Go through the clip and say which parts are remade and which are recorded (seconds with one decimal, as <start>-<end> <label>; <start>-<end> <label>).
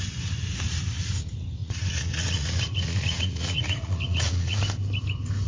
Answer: 0.0-1.6 recorded; 1.6-4.6 remade; 4.6-5.5 recorded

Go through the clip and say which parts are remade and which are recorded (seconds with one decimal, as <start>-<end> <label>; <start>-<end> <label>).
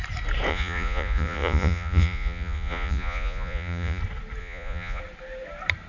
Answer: 0.0-0.5 recorded; 0.5-4.0 remade; 4.0-4.4 recorded; 4.4-5.0 remade; 5.0-5.9 recorded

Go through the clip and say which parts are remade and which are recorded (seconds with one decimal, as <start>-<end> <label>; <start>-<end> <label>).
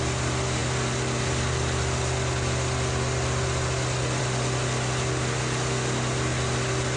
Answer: 0.0-7.0 recorded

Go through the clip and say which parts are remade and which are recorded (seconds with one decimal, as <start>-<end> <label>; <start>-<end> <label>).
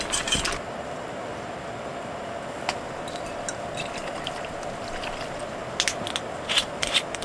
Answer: 0.0-7.2 recorded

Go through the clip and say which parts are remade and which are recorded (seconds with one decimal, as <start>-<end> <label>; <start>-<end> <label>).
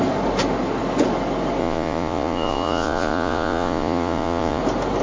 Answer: 0.0-1.6 recorded; 1.6-4.6 remade; 4.6-5.0 recorded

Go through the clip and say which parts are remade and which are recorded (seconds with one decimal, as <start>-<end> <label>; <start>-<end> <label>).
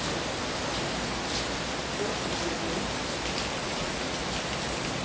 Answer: 0.0-3.6 recorded; 3.6-4.2 remade; 4.2-5.0 recorded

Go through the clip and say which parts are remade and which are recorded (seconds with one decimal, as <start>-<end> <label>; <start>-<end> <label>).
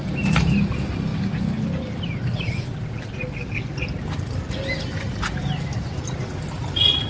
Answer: 0.0-7.1 recorded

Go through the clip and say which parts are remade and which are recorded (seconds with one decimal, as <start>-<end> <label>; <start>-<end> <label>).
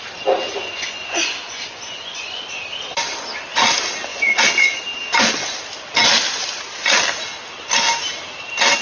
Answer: 0.0-0.6 recorded; 0.6-2.4 remade; 2.4-4.1 recorded; 4.1-4.8 remade; 4.8-8.8 recorded